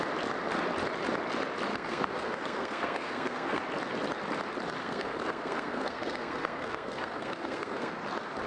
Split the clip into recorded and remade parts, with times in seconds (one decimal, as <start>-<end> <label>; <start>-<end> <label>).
0.0-1.7 recorded; 1.7-3.6 remade; 3.6-4.8 recorded; 4.8-7.9 remade; 7.9-8.5 recorded